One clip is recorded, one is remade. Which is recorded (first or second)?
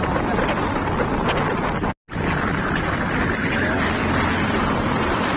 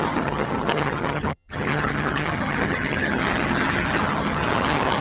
first